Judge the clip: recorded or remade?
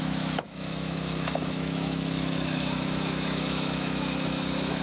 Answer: remade